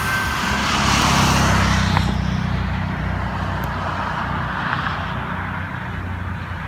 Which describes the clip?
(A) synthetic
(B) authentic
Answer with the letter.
B